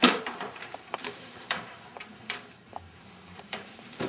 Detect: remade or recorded remade